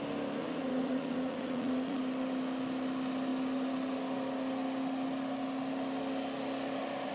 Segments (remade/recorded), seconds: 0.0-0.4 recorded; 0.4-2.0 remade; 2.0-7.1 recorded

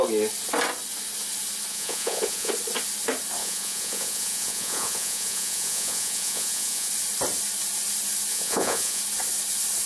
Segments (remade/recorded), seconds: 0.0-1.7 recorded; 1.7-2.5 remade; 2.5-3.4 recorded; 3.4-6.9 remade; 6.9-8.3 recorded; 8.3-9.0 remade; 9.0-9.9 recorded

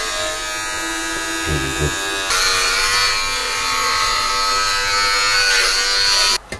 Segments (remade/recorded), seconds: 0.0-3.4 recorded; 3.4-4.3 remade; 4.3-6.6 recorded

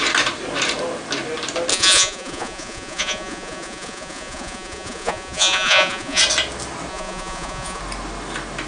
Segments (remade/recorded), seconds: 0.0-1.7 recorded; 1.7-6.2 remade; 6.2-6.9 recorded; 6.9-7.8 remade; 7.8-8.7 recorded